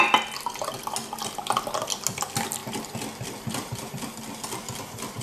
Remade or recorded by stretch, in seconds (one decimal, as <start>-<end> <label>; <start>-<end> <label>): 0.0-5.2 recorded